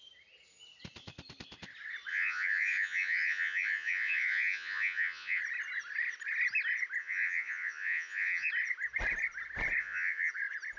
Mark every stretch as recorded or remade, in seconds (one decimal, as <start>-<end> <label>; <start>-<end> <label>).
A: 0.0-2.1 recorded; 2.1-5.4 remade; 5.4-7.0 recorded; 7.0-8.5 remade; 8.5-9.8 recorded; 9.8-10.3 remade; 10.3-10.8 recorded